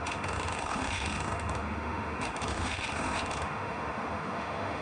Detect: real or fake fake